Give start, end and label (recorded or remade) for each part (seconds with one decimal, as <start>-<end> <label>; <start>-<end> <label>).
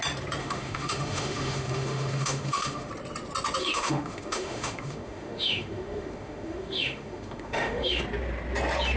0.0-0.4 recorded; 0.4-2.9 remade; 2.9-3.6 recorded; 3.6-8.0 remade; 8.0-9.0 recorded